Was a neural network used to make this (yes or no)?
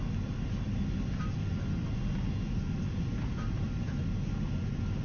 no